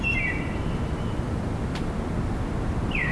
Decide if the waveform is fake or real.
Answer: real